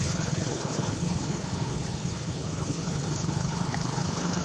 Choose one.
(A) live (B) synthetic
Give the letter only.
B